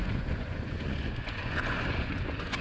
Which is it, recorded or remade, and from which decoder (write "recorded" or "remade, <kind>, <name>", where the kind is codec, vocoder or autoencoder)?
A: remade, vocoder, Vocos